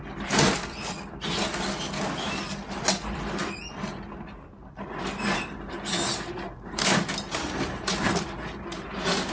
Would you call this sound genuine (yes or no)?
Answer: yes